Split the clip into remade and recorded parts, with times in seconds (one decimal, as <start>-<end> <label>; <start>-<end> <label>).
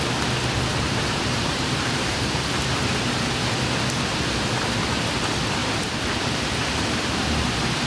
0.0-0.7 recorded; 0.7-2.7 remade; 2.7-5.6 recorded; 5.6-7.9 remade